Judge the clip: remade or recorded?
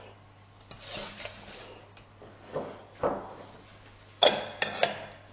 recorded